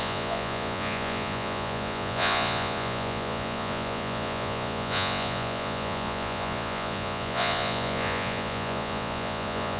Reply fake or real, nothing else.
fake